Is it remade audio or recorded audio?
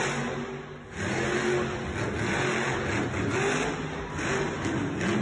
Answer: recorded